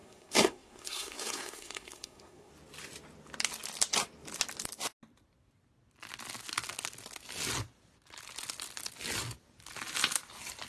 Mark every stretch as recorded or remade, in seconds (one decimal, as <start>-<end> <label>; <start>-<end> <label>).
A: 0.0-2.5 remade; 2.5-10.7 recorded